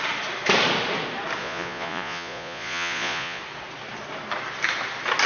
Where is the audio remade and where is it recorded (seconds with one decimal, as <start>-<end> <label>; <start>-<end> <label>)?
0.0-1.4 recorded; 1.4-3.4 remade; 3.4-5.3 recorded